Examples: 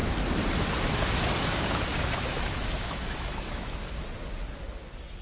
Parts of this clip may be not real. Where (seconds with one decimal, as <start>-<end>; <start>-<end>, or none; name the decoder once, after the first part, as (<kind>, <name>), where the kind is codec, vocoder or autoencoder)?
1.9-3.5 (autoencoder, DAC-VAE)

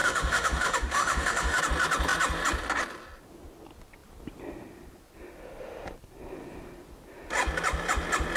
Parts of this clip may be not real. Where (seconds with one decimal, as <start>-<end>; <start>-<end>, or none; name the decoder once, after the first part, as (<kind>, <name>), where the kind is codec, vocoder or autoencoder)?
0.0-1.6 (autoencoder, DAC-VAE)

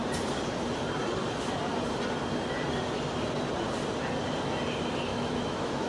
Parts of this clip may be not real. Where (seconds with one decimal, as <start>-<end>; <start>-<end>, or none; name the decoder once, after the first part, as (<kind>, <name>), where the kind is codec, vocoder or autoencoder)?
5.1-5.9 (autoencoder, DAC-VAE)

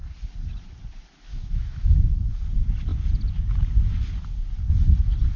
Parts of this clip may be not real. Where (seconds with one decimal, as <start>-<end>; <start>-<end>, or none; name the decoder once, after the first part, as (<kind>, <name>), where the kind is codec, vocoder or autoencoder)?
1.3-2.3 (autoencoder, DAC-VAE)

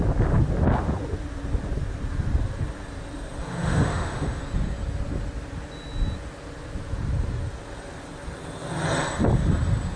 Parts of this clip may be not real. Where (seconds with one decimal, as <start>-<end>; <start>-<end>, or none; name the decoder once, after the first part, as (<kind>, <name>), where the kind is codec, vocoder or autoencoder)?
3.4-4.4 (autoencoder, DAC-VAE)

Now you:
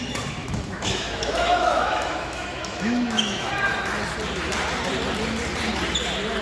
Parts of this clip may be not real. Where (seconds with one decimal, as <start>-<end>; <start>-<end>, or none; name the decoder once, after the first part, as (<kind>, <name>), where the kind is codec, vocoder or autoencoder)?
0.4-3.5 (autoencoder, DAC-VAE)

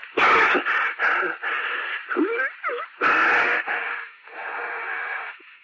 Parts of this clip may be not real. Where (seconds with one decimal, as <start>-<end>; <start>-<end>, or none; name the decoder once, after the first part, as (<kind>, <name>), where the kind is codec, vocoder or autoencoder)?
3.4-5.6 (autoencoder, DAC-VAE)

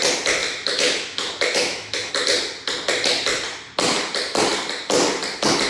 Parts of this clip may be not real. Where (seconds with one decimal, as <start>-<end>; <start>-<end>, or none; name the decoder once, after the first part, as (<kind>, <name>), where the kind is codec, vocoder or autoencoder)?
0.4-2.1 (autoencoder, DAC-VAE)